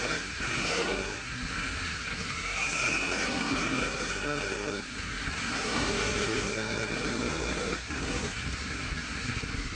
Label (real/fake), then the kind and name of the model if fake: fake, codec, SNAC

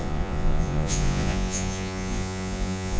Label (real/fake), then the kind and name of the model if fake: fake, vocoder, Vocos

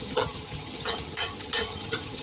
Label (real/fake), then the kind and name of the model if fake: fake, vocoder, HiFi-GAN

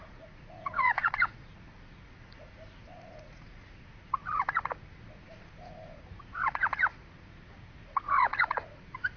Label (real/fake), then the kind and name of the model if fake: fake, vocoder, Vocos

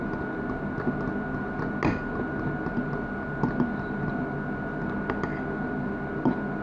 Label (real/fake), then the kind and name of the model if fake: real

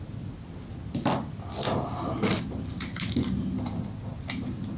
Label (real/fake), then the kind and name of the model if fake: real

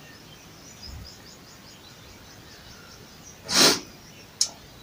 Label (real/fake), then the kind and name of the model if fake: real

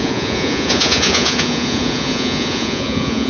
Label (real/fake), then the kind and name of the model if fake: fake, vocoder, Vocos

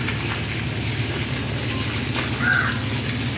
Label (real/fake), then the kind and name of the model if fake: real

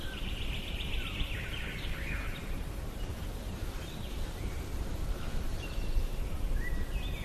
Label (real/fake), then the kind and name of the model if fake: fake, vocoder, BigVGAN v2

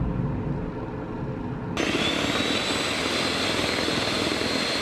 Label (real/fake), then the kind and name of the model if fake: real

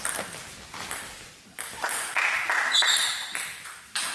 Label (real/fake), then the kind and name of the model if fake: real